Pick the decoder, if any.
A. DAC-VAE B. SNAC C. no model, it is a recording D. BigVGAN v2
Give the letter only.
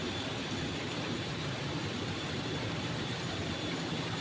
D